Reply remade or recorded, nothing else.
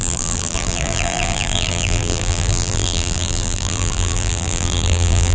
remade